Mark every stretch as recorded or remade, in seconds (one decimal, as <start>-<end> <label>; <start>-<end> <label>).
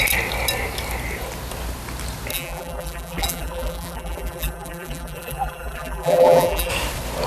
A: 0.0-2.3 recorded; 2.3-6.7 remade; 6.7-7.3 recorded